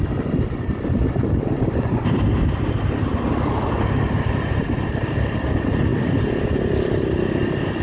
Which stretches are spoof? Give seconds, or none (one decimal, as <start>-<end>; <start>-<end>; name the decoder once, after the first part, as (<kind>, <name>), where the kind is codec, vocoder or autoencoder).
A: none

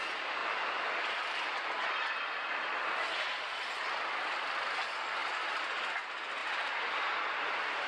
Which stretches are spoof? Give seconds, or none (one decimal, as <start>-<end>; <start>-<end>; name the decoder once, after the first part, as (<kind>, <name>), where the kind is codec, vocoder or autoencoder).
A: none

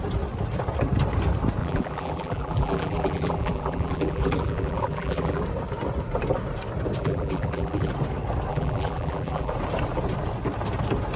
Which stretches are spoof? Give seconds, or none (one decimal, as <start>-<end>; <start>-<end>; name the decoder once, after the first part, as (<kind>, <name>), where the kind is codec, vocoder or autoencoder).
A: 1.6-5.4 (vocoder, BigVGAN v2); 7.0-7.9; 8.5-9.5